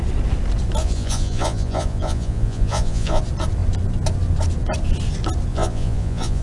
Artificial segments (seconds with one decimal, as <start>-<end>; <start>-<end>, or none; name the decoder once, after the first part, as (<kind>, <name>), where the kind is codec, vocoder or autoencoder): 0.8-3.2 (vocoder, Vocos); 5.5-6.4

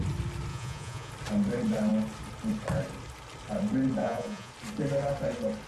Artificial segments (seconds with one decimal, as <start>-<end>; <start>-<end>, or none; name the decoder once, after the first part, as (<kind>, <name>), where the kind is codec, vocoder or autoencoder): 0.5-1.1 (vocoder, Vocos); 4.0-4.5

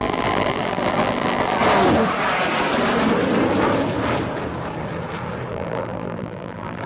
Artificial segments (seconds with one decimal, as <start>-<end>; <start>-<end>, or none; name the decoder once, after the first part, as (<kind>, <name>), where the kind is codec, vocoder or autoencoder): 0.0-1.6 (vocoder, BigVGAN v2); 5.5-6.9

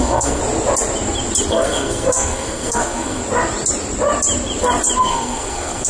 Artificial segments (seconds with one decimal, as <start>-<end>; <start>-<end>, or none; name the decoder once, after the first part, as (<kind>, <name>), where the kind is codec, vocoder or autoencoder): 0.0-0.4 (codec, SNAC); 1.5-3.2; 5.0-5.9

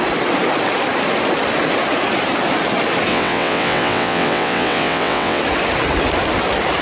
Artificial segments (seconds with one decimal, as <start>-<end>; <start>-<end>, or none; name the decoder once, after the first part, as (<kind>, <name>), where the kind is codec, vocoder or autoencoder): 3.1-5.4 (vocoder, WaveNeXt)

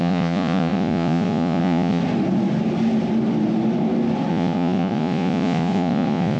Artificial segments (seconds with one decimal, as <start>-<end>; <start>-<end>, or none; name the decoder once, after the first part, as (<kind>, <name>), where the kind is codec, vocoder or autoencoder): 0.0-2.0 (vocoder, Vocos); 4.3-6.4

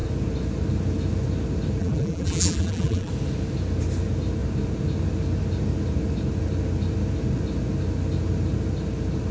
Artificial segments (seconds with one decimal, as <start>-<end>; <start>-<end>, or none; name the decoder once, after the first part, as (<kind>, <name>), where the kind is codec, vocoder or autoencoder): 1.8-3.1 (vocoder, BigVGAN v2)